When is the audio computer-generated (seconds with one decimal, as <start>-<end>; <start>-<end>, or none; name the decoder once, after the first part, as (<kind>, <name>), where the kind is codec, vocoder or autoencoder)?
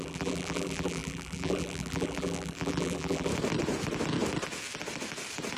0.0-3.3 (vocoder, BigVGAN v2)